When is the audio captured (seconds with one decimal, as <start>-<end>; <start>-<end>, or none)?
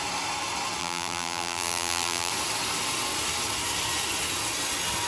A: 0.0-0.8; 2.3-5.1